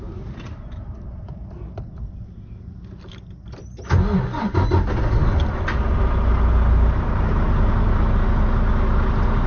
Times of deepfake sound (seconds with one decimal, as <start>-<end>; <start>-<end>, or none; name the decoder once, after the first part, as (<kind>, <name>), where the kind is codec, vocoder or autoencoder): none